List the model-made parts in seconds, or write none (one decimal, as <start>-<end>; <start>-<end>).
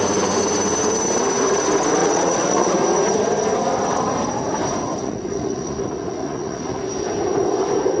2.0-2.7; 5.0-6.8